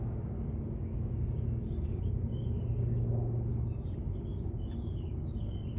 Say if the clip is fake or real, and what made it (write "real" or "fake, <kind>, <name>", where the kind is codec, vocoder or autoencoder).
fake, codec, DAC